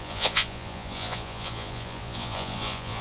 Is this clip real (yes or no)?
no